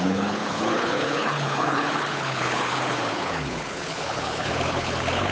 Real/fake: fake